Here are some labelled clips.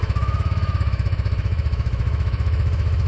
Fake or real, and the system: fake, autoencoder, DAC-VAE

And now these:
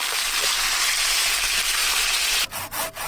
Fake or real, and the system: real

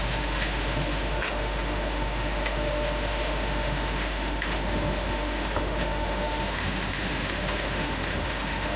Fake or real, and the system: fake, autoencoder, DAC-VAE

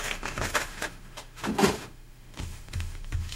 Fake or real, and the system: fake, autoencoder, DAC-VAE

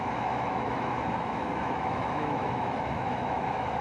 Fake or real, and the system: fake, autoencoder, DAC-VAE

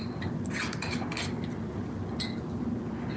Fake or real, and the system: real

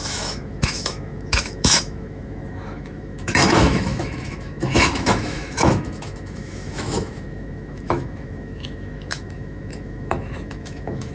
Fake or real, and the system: fake, autoencoder, DAC-VAE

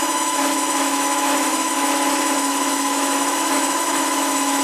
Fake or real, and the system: fake, autoencoder, DAC-VAE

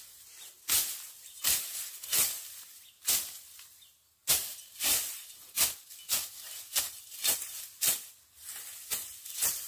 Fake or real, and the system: real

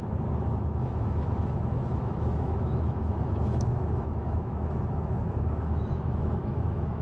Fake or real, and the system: fake, autoencoder, DAC-VAE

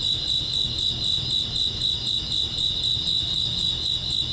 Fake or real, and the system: real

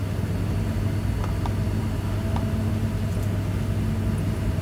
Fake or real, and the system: real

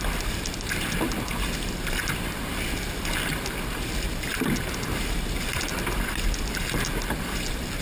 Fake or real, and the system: real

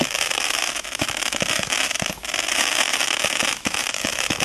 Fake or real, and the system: fake, autoencoder, DAC-VAE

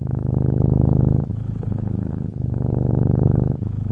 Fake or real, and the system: fake, autoencoder, DAC-VAE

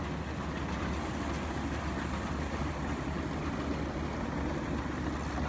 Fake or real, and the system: real